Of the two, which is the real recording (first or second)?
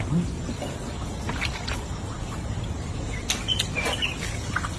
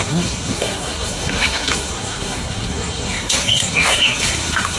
first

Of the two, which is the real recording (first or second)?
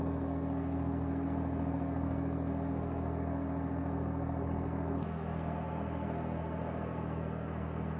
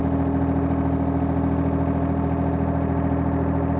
second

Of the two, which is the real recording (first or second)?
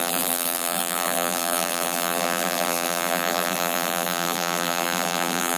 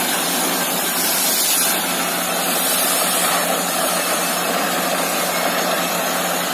second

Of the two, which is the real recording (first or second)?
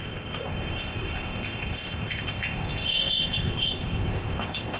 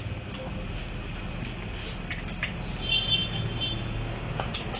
second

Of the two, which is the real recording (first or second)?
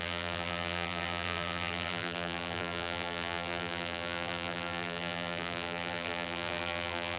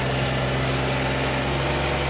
second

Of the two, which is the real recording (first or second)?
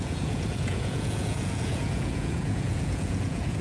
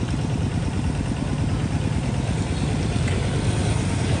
second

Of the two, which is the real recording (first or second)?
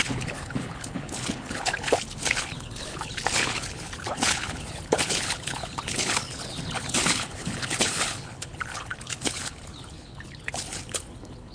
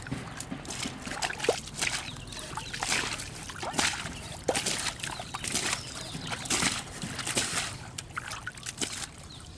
second